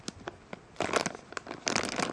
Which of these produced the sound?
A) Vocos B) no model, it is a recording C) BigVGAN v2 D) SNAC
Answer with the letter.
B